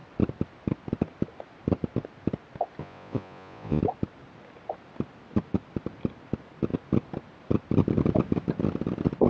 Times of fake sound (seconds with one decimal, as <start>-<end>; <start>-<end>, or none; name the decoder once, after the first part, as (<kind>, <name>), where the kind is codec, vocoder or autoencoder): 2.8-3.8 (vocoder, Vocos)